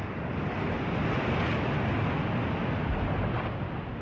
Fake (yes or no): no